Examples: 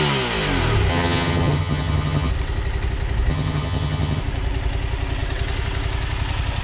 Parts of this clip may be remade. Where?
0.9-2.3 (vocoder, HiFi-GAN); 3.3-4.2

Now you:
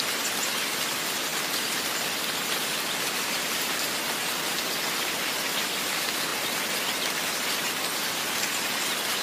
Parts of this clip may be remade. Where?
none

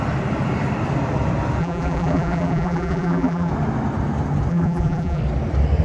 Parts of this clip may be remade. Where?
1.6-3.5 (vocoder, BigVGAN v2); 4.5-5.2